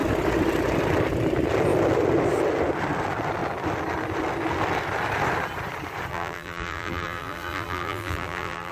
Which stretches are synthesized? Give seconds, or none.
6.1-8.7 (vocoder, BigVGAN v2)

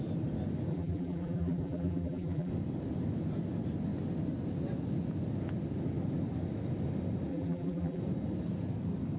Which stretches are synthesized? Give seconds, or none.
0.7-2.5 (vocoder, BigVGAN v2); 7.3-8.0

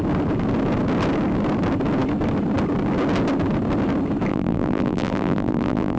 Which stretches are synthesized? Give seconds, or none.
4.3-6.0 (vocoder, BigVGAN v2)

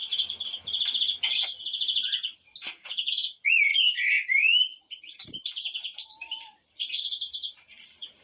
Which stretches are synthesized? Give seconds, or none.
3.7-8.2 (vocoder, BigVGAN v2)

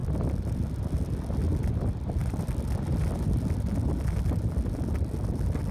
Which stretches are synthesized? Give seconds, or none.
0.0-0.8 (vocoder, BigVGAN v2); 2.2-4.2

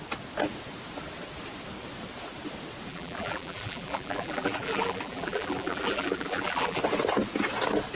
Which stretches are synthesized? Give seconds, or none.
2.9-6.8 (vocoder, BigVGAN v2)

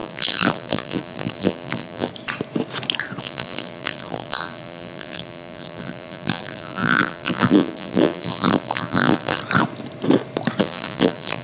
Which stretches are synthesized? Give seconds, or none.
0.0-2.1 (vocoder, BigVGAN v2); 3.2-9.4; 10.6-11.4